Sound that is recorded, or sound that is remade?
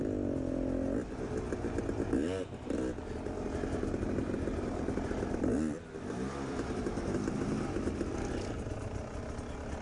recorded